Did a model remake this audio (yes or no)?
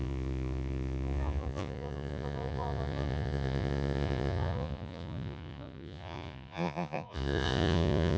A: yes